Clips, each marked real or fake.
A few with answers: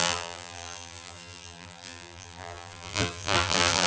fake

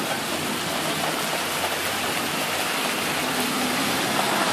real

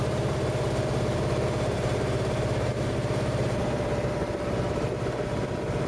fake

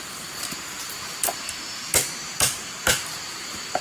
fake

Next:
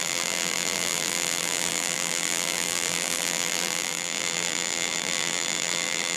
fake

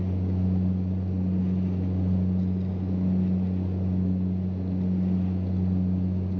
real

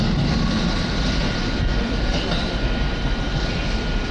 real